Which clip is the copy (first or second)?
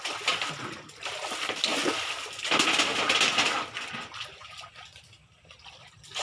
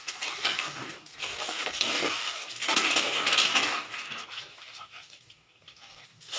second